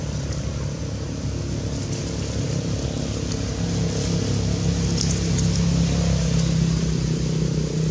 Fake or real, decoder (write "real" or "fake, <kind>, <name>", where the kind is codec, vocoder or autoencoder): real